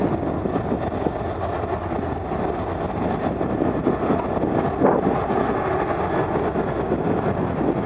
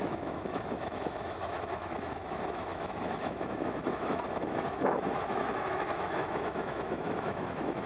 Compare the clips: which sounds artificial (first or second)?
second